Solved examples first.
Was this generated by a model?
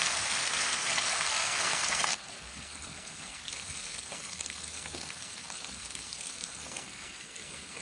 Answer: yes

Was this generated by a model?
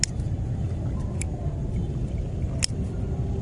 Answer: no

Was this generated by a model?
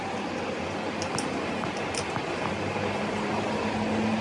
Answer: no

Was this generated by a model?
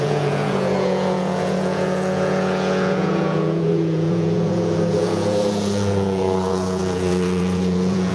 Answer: yes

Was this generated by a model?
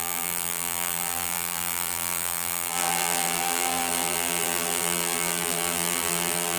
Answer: yes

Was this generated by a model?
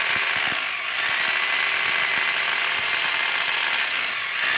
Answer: no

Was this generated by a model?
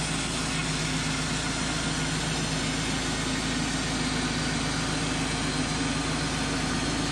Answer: no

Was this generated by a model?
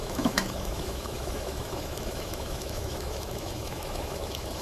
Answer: yes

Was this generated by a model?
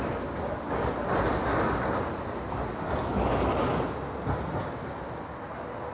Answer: no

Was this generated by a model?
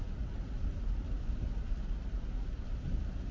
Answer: no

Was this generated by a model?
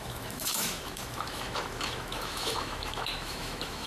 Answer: yes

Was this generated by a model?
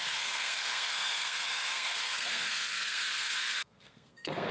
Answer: yes